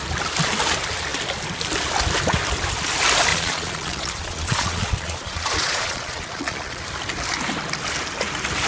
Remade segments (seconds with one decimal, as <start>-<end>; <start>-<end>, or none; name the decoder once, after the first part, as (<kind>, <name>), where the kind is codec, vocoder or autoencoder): 3.3-6.8 (vocoder, Vocos)